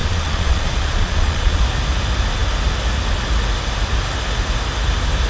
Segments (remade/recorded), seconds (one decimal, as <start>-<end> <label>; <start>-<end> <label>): 0.0-1.6 remade; 1.6-5.3 recorded